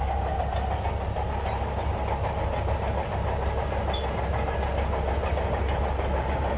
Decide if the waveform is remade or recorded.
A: recorded